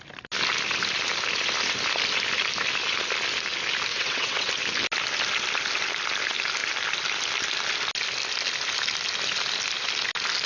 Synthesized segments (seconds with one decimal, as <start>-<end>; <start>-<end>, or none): 3.9-4.5